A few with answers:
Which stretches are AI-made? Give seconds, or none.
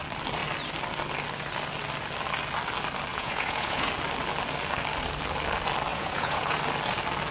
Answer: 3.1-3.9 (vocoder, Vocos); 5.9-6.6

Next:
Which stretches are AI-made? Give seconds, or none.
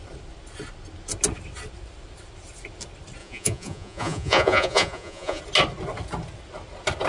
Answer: 3.2-5.4 (vocoder, Vocos)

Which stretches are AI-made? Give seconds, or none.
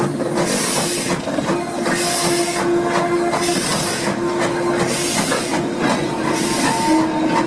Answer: 5.5-6.1 (vocoder, Vocos)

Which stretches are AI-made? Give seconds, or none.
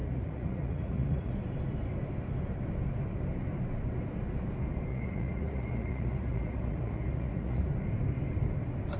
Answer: 0.0-1.3 (vocoder, Vocos); 4.9-7.6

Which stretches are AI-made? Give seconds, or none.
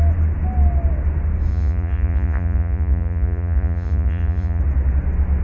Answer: 1.5-4.6 (vocoder, Vocos)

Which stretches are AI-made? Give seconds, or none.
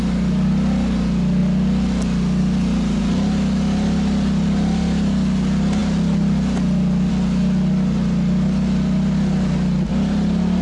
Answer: none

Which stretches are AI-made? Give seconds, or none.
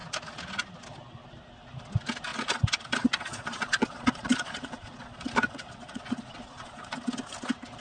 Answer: 2.3-7.0 (vocoder, Vocos)